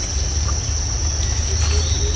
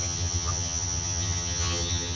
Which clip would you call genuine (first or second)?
first